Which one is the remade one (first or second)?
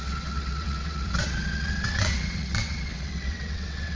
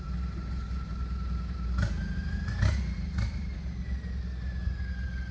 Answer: first